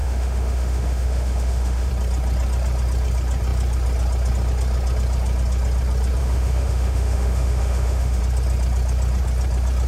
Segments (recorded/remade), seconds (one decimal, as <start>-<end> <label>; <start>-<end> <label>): 0.0-1.9 remade; 1.9-6.2 recorded; 6.2-8.2 remade; 8.2-9.9 recorded